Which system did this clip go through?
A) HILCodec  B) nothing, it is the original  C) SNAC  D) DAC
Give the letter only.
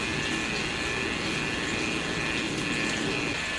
B